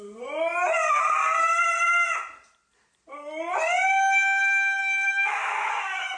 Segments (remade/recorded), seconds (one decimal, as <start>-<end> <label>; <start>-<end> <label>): 0.0-4.8 recorded; 4.8-5.7 remade; 5.7-6.2 recorded